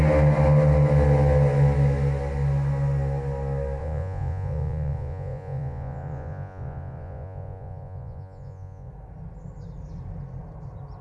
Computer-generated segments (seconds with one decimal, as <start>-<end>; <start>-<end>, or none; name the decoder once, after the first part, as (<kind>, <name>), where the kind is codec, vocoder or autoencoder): 3.8-8.9 (vocoder, Vocos)

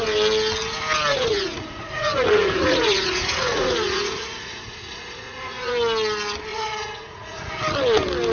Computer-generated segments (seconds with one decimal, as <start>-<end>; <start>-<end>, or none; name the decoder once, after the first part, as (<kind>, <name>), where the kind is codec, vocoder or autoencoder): 1.1-5.7 (vocoder, Vocos); 6.5-7.6

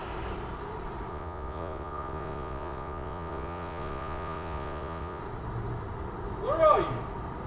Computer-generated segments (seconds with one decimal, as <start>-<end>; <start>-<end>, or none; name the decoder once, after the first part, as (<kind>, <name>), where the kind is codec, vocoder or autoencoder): 1.1-5.2 (vocoder, Vocos)